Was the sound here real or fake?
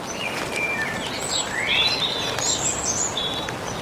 real